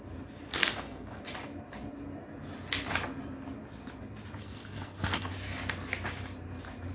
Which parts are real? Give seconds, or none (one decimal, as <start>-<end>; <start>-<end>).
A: 0.0-0.6; 1.2-4.4; 5.3-6.9